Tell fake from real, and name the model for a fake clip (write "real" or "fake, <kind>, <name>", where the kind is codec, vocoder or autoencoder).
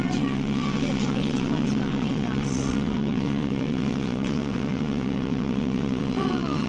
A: fake, vocoder, WaveNeXt